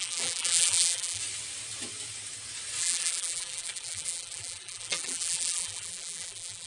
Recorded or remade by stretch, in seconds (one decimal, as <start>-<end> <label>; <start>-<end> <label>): 0.0-1.2 remade; 1.2-2.8 recorded; 2.8-6.7 remade

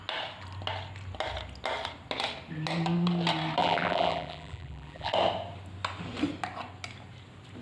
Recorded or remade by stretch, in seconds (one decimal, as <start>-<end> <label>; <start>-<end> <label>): 0.0-3.6 recorded; 3.6-5.1 remade; 5.1-7.6 recorded

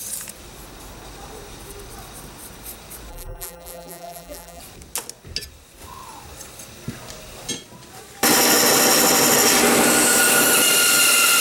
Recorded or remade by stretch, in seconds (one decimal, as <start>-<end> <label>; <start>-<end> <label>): 0.0-3.1 recorded; 3.1-4.6 remade; 4.6-11.4 recorded

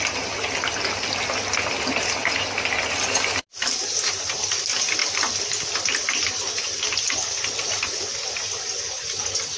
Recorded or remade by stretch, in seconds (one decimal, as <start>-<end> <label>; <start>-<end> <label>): 0.0-5.0 recorded; 5.0-8.6 remade; 8.6-9.6 recorded

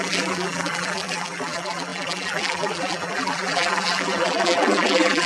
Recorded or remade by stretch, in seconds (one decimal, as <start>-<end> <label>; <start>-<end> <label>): 0.0-5.3 remade

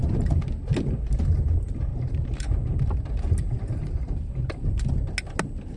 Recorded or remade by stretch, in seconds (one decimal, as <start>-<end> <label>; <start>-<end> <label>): 0.0-1.9 recorded; 1.9-4.9 remade; 4.9-5.8 recorded

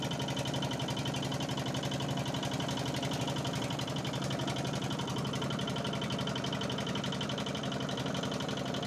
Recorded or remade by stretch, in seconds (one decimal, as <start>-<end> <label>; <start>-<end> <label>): 0.0-8.9 recorded